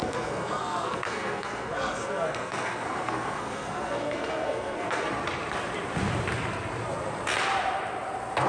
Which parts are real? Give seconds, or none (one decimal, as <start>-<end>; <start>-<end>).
5.1-8.5